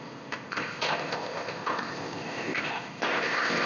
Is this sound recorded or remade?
remade